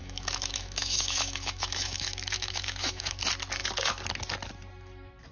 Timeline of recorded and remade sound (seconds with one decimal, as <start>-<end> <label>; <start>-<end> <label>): 0.0-3.2 remade; 3.2-5.3 recorded